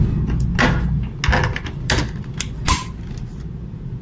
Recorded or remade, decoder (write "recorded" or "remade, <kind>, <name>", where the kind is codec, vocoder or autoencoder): recorded